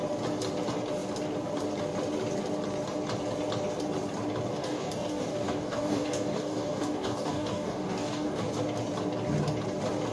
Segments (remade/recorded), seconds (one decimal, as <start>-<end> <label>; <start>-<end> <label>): 0.0-4.5 recorded; 4.5-8.5 remade; 8.5-10.1 recorded